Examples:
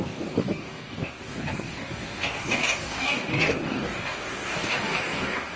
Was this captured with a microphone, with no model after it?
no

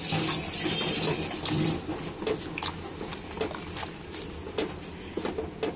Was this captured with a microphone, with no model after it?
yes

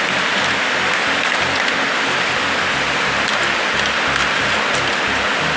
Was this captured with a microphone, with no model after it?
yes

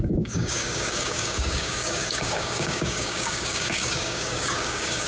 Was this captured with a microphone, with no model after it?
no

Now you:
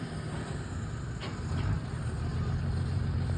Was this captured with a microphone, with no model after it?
yes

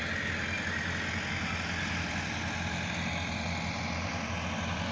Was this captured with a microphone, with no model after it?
yes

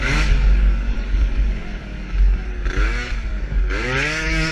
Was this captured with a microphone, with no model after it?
no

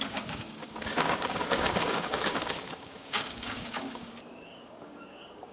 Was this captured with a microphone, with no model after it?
no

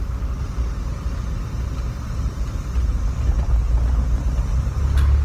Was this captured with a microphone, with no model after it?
yes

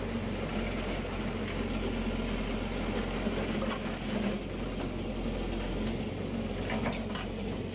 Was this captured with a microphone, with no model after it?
yes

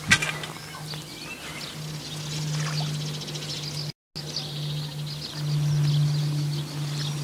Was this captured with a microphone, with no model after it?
yes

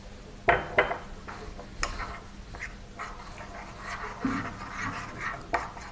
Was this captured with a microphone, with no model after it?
yes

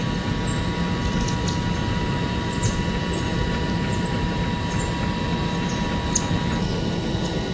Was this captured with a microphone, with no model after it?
yes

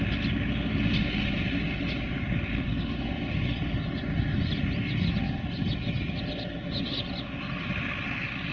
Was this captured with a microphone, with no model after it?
yes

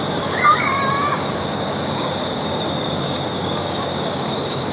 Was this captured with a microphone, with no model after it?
no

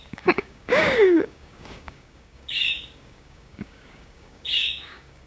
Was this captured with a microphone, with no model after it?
no